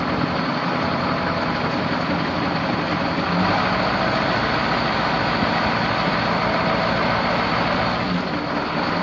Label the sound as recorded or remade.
recorded